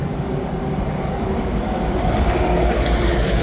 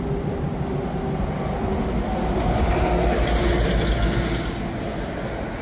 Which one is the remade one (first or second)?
first